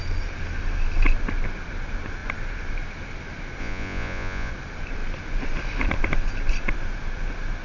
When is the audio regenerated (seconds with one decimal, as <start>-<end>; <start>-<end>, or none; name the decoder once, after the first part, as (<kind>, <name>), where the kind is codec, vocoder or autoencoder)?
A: 3.6-4.5 (vocoder, Vocos)